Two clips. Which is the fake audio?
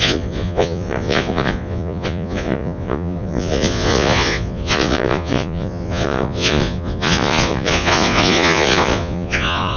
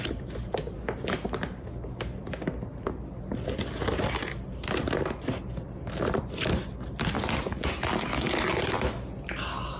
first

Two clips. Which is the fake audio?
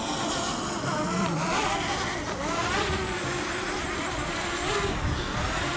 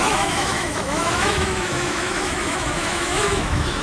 second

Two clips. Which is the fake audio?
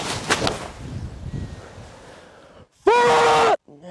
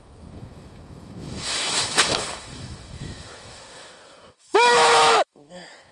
second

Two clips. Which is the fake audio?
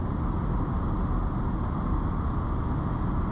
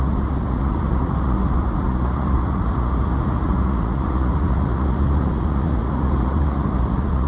second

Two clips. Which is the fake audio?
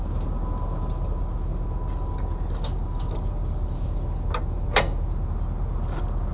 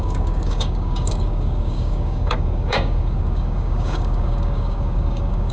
second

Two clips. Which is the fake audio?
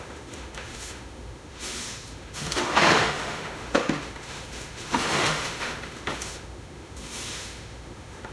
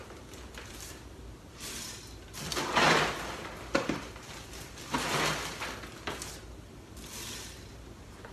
first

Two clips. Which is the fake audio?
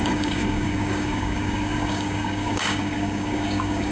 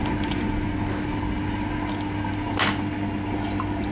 first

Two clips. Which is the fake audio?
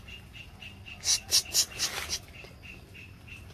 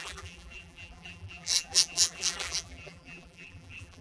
second